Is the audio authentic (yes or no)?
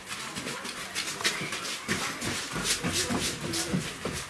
yes